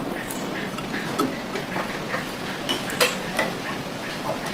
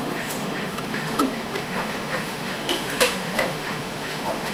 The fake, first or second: second